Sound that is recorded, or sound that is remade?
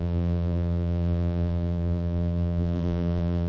remade